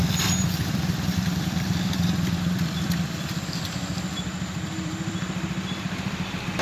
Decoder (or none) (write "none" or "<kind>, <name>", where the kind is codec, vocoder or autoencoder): vocoder, BigVGAN v2